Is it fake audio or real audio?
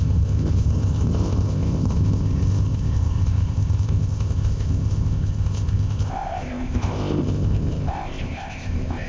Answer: fake